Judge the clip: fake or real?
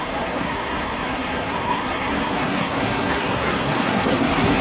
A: fake